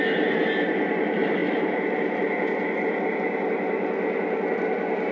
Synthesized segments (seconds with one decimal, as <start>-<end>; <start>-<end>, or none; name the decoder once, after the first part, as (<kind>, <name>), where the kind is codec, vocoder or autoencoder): none